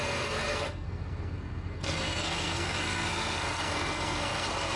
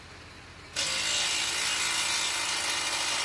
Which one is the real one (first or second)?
second